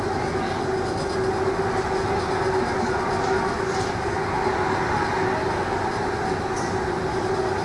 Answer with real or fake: real